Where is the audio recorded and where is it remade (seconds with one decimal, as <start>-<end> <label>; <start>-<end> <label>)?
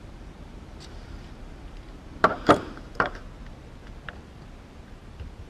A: 0.0-3.2 remade; 3.2-5.5 recorded